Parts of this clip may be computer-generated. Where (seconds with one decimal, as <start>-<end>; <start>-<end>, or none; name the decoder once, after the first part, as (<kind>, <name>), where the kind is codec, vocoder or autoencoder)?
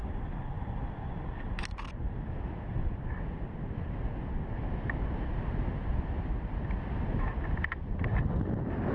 0.0-1.2 (vocoder, BigVGAN v2)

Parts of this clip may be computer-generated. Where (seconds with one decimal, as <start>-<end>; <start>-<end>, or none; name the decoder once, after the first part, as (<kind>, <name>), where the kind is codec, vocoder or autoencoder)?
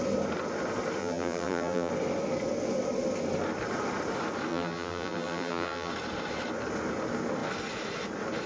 1.0-1.9 (vocoder, BigVGAN v2); 4.5-5.9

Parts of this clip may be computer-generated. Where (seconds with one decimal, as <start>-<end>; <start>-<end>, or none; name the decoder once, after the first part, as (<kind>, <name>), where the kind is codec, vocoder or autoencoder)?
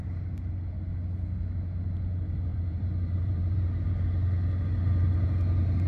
2.5-3.9 (vocoder, BigVGAN v2)